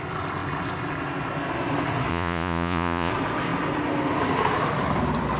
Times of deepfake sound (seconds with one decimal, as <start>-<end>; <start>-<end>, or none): 2.1-3.1